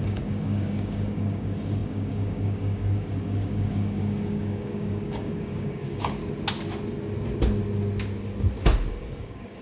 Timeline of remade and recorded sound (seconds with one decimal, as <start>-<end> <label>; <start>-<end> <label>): 0.0-6.2 remade; 6.2-8.9 recorded; 8.9-9.6 remade